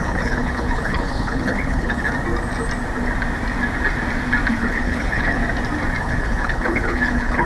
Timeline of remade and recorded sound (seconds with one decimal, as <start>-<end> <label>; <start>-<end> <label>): 0.0-2.1 remade; 2.1-4.5 recorded; 4.5-5.4 remade; 5.4-6.0 recorded; 6.0-7.5 remade